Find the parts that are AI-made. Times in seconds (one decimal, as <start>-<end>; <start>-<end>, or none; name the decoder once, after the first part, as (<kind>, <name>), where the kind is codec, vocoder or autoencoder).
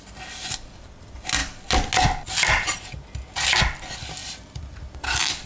4.2-4.8 (vocoder, BigVGAN v2)